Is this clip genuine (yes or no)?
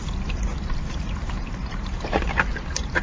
yes